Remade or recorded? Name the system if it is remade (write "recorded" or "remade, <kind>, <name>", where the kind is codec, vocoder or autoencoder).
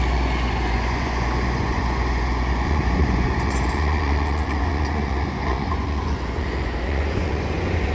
remade, vocoder, Vocos